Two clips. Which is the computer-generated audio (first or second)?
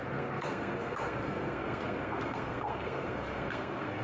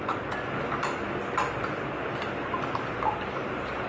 first